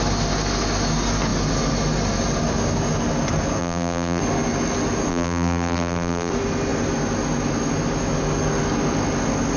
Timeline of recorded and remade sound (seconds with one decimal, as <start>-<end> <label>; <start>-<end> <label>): 0.0-3.6 recorded; 3.6-4.2 remade; 4.2-5.1 recorded; 5.1-6.3 remade; 6.3-9.6 recorded